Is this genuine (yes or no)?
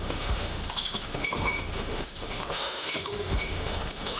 no